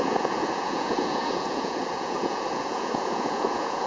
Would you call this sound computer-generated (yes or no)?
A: yes